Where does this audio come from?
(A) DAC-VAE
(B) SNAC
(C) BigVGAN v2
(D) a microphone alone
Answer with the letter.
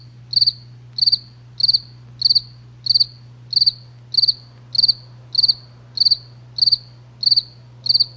D